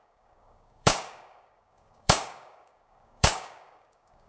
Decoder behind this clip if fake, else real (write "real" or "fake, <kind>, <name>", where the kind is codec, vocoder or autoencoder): fake, codec, DAC